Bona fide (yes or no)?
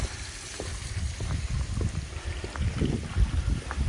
yes